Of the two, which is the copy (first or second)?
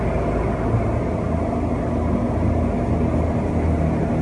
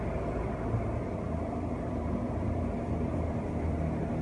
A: second